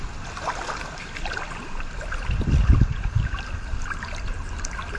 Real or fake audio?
fake